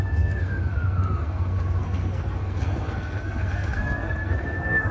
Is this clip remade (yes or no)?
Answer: yes